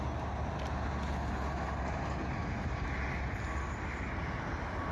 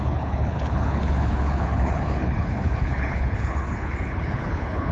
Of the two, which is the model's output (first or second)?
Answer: second